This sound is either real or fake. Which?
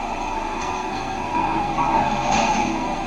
fake